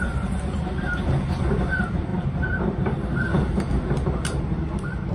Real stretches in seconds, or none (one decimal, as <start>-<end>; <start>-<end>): 0.0-5.1